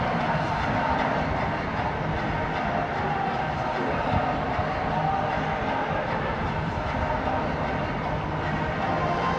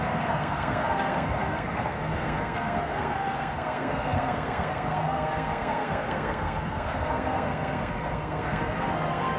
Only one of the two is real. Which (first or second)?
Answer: first